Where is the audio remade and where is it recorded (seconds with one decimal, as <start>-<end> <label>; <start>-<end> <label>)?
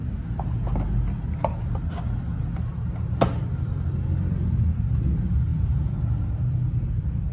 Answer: 0.0-5.5 recorded; 5.5-6.0 remade; 6.0-7.3 recorded